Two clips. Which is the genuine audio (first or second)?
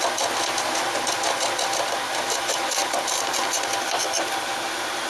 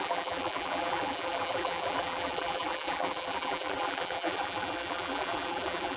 first